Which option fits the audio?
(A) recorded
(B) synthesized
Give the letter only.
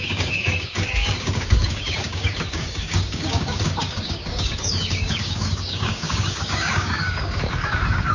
B